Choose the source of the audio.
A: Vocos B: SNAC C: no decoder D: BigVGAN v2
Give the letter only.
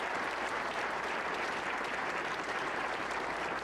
D